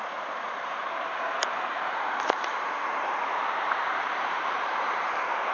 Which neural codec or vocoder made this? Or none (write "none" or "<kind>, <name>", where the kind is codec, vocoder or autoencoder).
vocoder, BigVGAN v2